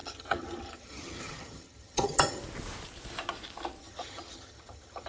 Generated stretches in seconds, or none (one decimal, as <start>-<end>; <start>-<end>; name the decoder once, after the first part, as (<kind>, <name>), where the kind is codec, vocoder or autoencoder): 0.0-2.4 (vocoder, HiFi-GAN); 3.8-5.1